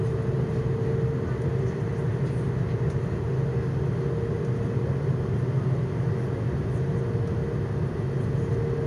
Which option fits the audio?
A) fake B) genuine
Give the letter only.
B